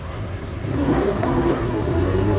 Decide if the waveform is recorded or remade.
remade